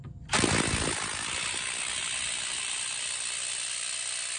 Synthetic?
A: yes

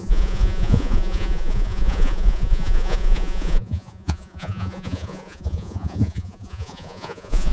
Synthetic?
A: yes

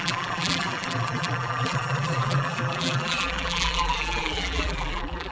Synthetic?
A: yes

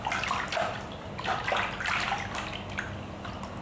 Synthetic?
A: no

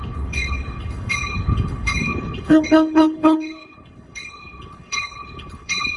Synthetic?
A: yes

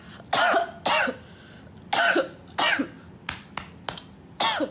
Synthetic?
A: no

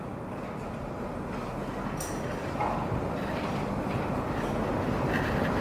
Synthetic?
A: no